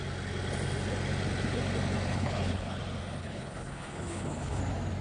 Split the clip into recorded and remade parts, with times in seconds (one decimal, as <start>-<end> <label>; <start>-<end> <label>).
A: 0.0-2.1 recorded; 2.1-2.8 remade; 2.8-3.2 recorded; 3.2-4.6 remade; 4.6-5.0 recorded